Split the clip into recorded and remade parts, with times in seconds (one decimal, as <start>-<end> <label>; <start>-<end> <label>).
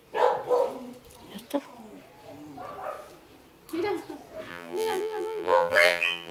0.0-4.5 recorded; 4.5-6.3 remade